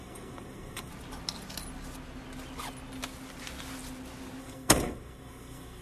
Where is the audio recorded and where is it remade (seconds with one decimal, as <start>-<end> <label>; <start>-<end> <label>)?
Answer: 0.0-0.9 remade; 0.9-4.4 recorded; 4.4-5.8 remade